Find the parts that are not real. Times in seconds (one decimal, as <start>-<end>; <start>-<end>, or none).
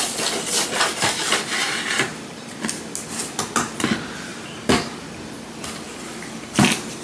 1.6-2.6; 4.3-5.1